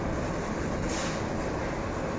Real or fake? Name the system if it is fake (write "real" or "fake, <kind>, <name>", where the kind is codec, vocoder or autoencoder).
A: real